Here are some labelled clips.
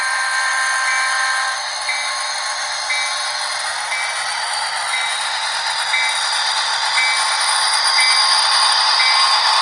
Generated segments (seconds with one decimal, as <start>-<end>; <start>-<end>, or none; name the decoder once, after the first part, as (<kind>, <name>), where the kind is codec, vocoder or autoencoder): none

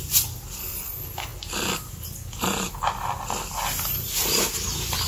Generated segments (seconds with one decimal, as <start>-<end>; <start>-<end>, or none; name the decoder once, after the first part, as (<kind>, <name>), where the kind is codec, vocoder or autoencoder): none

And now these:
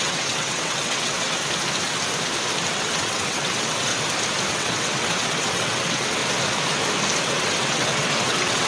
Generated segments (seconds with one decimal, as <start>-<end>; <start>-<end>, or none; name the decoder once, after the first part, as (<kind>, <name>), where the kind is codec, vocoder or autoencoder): 0.0-1.4 (vocoder, WaveNeXt); 2.7-3.9; 4.5-6.2; 7.3-8.7

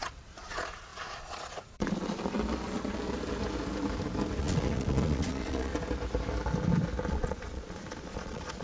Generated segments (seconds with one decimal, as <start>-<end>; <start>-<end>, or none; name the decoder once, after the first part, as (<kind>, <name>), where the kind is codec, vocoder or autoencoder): 0.0-2.2 (vocoder, Vocos); 4.4-5.7; 7.1-8.6